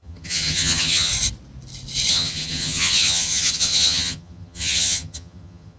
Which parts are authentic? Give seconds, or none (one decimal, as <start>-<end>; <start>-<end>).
1.1-2.1